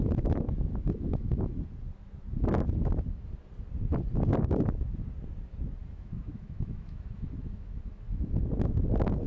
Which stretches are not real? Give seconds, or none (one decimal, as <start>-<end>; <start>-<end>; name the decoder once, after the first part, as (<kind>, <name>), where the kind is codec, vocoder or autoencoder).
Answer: 0.7-1.6 (autoencoder, DAC-VAE); 5.8-8.3